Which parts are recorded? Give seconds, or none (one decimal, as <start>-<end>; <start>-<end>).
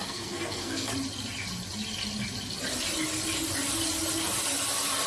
0.9-5.1